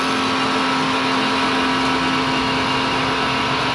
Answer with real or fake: real